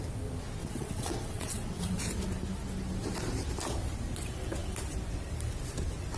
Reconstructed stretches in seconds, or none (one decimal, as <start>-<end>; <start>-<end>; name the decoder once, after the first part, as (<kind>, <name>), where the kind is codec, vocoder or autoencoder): 0.6-2.0 (vocoder, WaveNeXt)